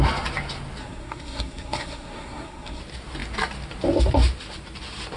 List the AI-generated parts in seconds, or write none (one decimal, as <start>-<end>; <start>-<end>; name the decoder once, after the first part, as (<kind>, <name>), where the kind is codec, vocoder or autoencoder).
0.8-2.8 (codec, SNAC)